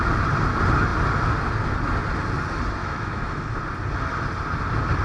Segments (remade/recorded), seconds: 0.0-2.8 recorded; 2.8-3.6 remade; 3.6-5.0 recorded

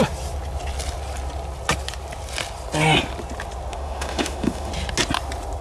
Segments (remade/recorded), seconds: 0.0-3.7 recorded; 3.7-4.7 remade; 4.7-5.6 recorded

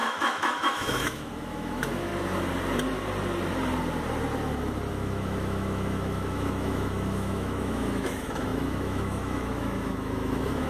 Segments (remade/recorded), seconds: 0.0-2.1 remade; 2.1-4.9 recorded; 4.9-10.7 remade

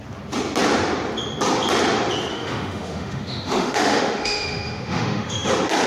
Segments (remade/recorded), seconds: 0.0-2.3 recorded; 2.3-5.5 remade; 5.5-5.9 recorded

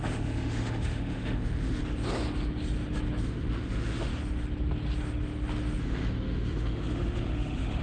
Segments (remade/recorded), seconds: 0.0-1.8 remade; 1.8-3.2 recorded; 3.2-4.1 remade; 4.1-5.8 recorded; 5.8-7.8 remade

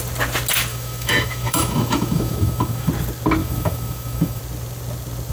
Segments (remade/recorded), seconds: 0.0-0.7 recorded; 0.7-2.9 remade; 2.9-3.4 recorded; 3.4-4.4 remade; 4.4-5.3 recorded

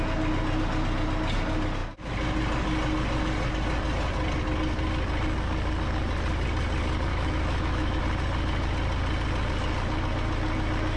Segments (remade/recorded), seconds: 0.0-7.1 recorded; 7.1-8.0 remade; 8.0-11.0 recorded